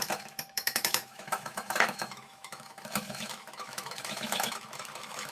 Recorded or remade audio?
remade